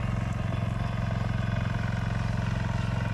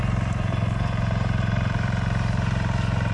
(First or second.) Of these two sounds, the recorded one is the first